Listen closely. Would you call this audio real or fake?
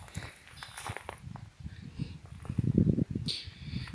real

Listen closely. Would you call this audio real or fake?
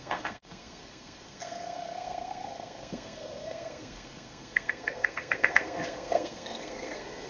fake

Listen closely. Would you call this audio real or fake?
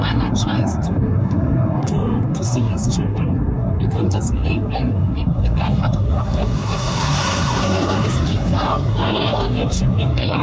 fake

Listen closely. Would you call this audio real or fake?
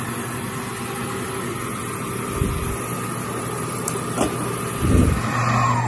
real